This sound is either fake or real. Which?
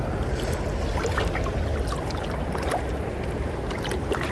real